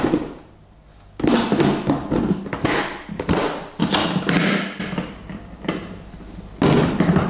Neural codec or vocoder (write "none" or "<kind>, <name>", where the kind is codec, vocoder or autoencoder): none